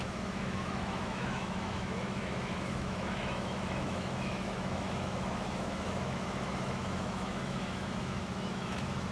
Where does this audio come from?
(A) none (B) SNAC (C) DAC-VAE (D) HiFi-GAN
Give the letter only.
C